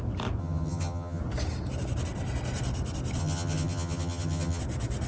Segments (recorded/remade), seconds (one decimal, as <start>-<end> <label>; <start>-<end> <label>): 0.0-0.4 recorded; 0.4-1.2 remade; 1.2-3.2 recorded; 3.2-4.6 remade; 4.6-5.1 recorded